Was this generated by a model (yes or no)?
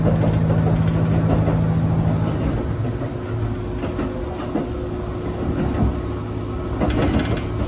no